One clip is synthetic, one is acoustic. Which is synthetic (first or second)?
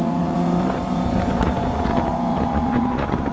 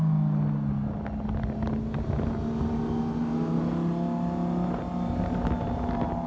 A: first